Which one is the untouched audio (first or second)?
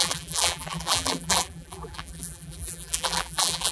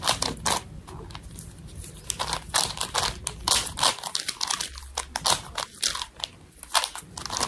second